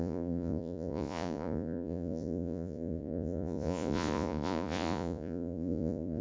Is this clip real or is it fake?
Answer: fake